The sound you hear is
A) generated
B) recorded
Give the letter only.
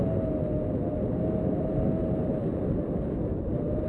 B